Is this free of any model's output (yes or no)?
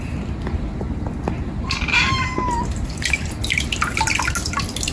yes